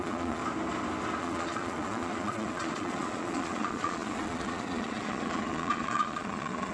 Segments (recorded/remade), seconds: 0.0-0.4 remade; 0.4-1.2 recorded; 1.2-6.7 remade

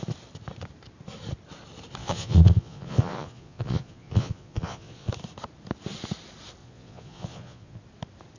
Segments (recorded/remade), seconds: 0.0-2.0 recorded; 2.0-5.1 remade; 5.1-6.6 recorded; 6.6-7.8 remade; 7.8-8.4 recorded

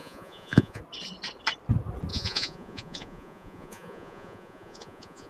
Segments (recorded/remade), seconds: 0.0-0.8 remade; 0.8-2.1 recorded; 2.1-5.3 remade

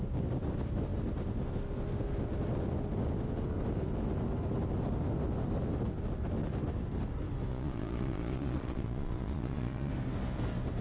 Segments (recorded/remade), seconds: 0.0-7.5 recorded; 7.5-9.9 remade; 9.9-10.8 recorded